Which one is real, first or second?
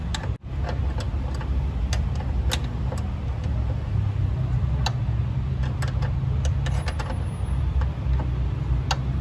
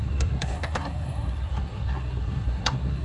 first